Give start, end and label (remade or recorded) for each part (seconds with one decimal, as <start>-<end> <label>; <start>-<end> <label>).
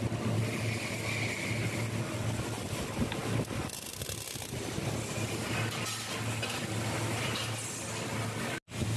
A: 0.0-9.0 recorded